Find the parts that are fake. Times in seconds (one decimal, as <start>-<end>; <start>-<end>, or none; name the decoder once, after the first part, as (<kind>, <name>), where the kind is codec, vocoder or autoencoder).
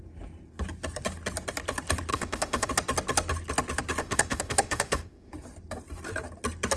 2.1-2.7 (autoencoder, DAC-VAE); 4.0-5.3